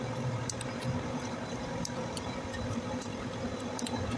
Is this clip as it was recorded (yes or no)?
no